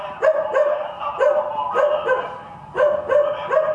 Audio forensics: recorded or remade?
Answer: recorded